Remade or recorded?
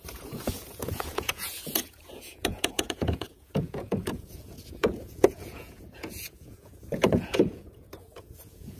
remade